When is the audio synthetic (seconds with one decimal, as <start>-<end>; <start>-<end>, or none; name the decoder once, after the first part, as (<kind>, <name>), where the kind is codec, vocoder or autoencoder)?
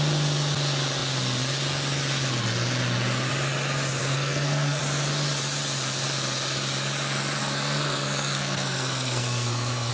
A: 4.0-4.8 (codec, SNAC); 7.4-9.9